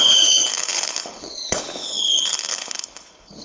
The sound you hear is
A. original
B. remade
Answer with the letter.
B